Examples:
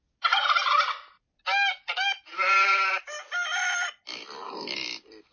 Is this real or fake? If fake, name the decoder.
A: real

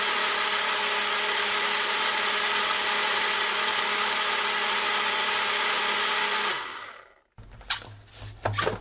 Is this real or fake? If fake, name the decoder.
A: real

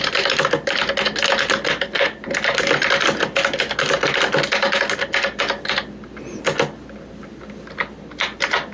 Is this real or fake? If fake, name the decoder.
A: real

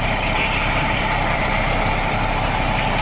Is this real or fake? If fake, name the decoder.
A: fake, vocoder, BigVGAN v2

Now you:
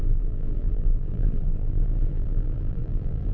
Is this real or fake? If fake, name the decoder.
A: fake, vocoder, BigVGAN v2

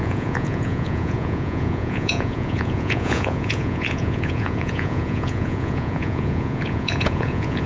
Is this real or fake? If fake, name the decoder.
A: fake, vocoder, Vocos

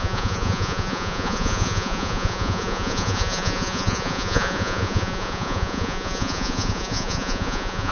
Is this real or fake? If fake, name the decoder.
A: fake, vocoder, Vocos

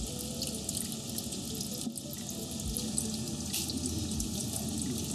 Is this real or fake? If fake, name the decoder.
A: real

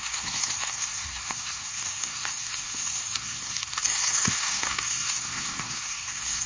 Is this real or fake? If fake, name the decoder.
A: fake, codec, SNAC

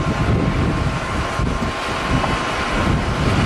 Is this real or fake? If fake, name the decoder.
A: real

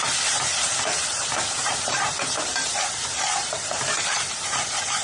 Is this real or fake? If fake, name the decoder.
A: fake, vocoder, BigVGAN v2